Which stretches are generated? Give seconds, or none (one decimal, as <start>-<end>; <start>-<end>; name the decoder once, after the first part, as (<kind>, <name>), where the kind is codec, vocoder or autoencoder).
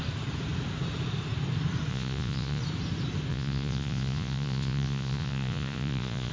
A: 1.9-2.6 (vocoder, Vocos); 3.3-6.3